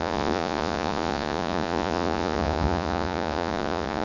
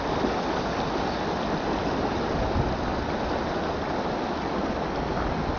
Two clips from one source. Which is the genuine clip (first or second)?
second